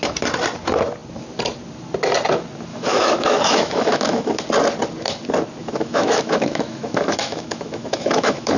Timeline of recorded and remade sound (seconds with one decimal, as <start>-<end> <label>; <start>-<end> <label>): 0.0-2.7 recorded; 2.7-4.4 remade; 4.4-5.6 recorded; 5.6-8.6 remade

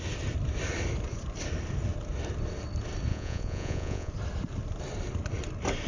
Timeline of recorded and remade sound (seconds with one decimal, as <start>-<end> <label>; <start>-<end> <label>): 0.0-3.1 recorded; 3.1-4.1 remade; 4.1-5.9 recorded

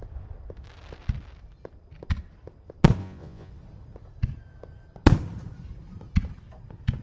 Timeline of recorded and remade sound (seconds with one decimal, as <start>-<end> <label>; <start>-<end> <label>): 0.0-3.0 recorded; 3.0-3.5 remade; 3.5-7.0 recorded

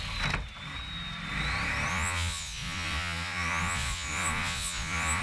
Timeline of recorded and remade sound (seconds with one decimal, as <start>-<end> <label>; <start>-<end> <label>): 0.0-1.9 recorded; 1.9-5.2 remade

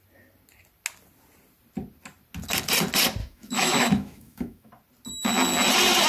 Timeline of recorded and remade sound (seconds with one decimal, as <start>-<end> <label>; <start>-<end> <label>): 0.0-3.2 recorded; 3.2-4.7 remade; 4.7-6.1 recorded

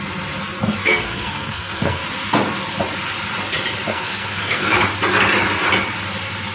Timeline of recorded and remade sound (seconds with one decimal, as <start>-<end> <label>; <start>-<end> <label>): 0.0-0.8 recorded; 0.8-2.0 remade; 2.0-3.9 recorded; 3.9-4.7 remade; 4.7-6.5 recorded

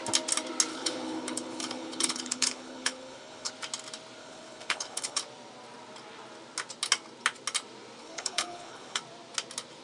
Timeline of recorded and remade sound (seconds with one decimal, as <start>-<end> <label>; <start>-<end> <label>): 0.0-0.7 recorded; 0.7-3.5 remade; 3.5-4.2 recorded; 4.2-5.2 remade; 5.2-8.0 recorded; 8.0-9.0 remade; 9.0-9.8 recorded